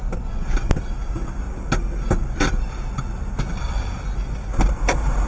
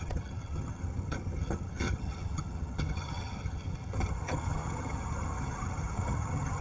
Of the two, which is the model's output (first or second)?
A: second